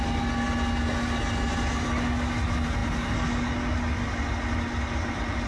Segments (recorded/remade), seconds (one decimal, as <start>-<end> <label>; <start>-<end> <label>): 0.0-5.5 recorded